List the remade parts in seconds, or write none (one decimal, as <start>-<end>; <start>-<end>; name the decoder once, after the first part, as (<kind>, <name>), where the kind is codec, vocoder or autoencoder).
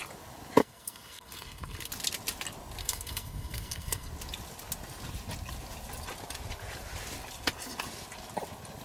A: 0.6-1.9 (codec, SNAC); 2.8-4.1